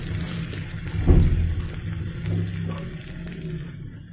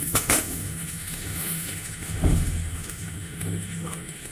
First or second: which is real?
first